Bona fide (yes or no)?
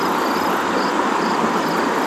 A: yes